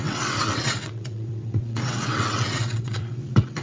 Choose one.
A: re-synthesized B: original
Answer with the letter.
A